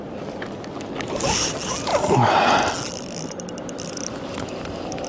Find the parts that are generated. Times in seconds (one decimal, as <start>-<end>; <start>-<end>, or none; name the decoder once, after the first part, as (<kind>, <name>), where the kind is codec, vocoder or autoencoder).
none